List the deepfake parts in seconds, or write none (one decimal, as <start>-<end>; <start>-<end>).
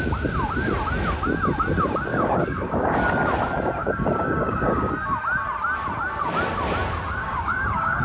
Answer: 2.1-3.0; 3.8-4.9; 7.2-8.0